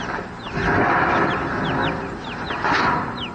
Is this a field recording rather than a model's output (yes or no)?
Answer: yes